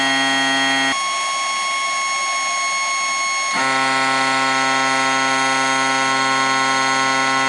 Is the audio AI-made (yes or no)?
no